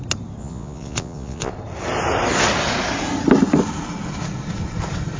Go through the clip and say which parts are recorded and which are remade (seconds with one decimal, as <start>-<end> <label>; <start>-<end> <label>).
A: 0.0-0.4 recorded; 0.4-1.5 remade; 1.5-5.2 recorded